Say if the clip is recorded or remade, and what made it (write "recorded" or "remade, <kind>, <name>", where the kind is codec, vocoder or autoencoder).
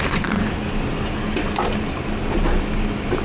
recorded